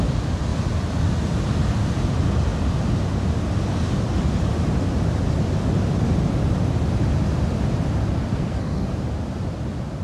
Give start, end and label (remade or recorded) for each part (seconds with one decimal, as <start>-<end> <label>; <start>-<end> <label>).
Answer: 0.0-8.3 recorded; 8.3-8.9 remade; 8.9-10.0 recorded